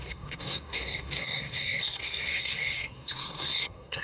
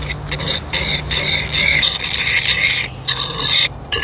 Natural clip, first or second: second